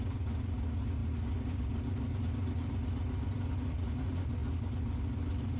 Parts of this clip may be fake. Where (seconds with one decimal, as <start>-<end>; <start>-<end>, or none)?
none